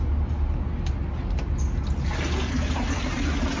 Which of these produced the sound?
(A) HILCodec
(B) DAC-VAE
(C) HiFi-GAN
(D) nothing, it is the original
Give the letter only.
D